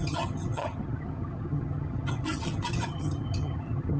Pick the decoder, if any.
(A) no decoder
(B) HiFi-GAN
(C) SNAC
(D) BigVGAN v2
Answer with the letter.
B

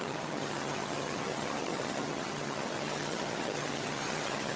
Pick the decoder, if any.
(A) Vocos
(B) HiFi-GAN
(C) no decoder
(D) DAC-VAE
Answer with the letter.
B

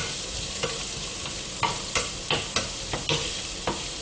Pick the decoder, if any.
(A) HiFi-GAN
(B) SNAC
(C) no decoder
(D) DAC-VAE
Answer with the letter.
C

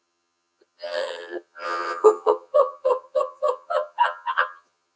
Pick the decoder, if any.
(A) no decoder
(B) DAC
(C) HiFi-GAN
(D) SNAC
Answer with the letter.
C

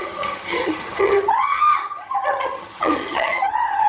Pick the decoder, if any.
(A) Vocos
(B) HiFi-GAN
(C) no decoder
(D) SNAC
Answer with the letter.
B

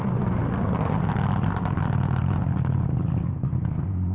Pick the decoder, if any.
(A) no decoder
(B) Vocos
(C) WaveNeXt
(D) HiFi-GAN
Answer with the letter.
A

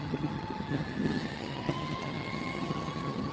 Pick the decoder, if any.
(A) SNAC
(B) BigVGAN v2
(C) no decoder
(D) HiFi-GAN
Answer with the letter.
D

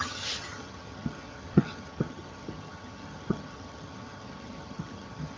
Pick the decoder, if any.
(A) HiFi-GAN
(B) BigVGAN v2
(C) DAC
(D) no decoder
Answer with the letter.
A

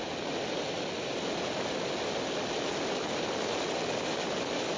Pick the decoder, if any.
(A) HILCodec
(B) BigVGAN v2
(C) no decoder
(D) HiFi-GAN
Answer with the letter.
C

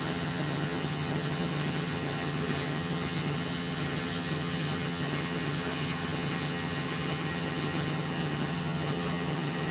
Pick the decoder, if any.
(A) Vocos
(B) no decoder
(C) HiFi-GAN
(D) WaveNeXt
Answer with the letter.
C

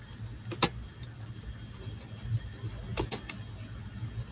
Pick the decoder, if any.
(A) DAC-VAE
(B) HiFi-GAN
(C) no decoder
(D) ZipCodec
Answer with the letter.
C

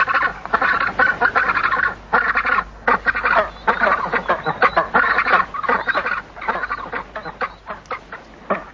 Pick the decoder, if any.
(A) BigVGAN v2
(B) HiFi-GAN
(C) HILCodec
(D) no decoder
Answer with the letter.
D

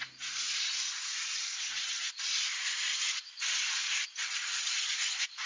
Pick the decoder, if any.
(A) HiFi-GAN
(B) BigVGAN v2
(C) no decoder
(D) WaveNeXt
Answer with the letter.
C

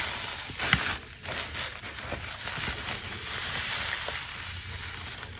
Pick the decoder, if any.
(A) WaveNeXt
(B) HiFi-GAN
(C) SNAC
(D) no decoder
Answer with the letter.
D